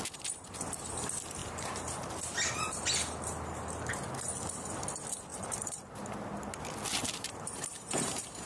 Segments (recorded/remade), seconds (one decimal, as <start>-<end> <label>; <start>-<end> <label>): 0.0-1.4 recorded; 1.4-2.1 remade; 2.1-5.3 recorded; 5.3-6.1 remade; 6.1-7.0 recorded; 7.0-8.5 remade